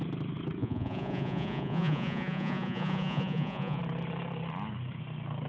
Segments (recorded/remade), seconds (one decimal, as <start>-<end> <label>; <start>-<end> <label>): 0.0-0.6 recorded; 0.6-3.8 remade; 3.8-5.5 recorded